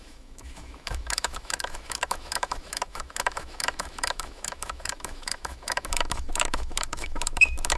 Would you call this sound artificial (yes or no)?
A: yes